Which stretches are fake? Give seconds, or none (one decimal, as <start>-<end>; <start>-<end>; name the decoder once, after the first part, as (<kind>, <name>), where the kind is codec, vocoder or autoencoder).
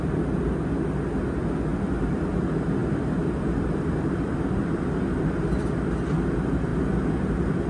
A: 1.7-2.4 (vocoder, BigVGAN v2); 2.8-4.9